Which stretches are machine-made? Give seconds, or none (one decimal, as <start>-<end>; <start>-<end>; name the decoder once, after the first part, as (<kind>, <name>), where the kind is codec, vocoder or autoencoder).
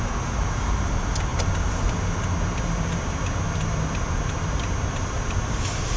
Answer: none